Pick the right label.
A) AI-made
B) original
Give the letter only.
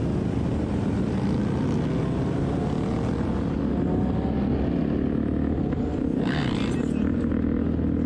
B